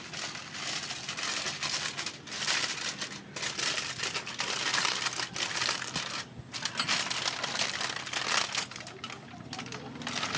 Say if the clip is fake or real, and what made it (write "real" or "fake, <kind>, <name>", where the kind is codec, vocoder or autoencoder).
real